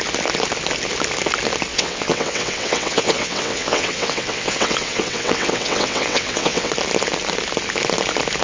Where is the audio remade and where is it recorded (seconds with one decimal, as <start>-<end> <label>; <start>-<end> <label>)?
0.0-1.7 recorded; 1.7-6.7 remade; 6.7-8.4 recorded

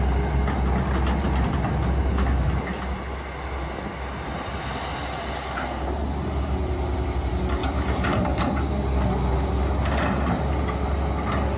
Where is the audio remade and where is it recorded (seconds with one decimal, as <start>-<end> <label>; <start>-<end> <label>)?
0.0-11.6 recorded